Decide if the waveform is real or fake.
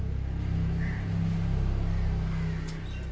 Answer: real